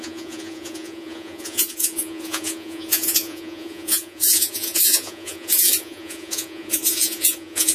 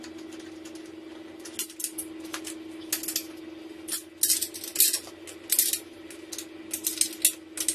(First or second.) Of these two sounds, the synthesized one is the first